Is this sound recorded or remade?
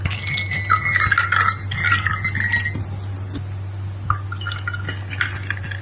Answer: recorded